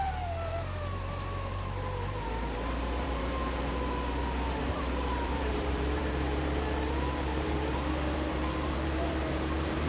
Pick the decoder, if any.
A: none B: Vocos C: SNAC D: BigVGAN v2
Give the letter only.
D